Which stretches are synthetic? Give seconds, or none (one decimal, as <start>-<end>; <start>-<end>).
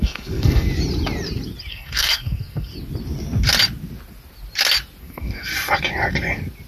0.0-0.7; 1.7-2.7; 5.0-5.5